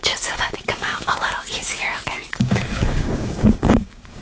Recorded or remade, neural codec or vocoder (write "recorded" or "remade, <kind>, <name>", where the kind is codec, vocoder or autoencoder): remade, codec, DAC